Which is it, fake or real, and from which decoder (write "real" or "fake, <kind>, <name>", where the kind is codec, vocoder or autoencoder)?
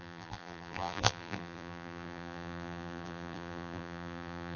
fake, vocoder, BigVGAN v2